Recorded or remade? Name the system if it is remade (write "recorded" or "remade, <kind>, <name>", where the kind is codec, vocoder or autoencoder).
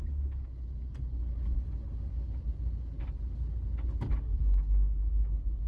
recorded